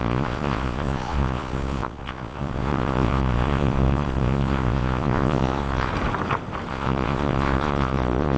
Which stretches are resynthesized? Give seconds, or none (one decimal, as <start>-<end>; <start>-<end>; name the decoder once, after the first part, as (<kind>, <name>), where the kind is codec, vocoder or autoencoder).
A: 0.0-5.9 (vocoder, Vocos); 6.7-8.4